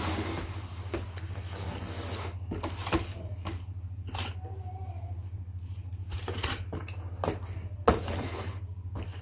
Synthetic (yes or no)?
no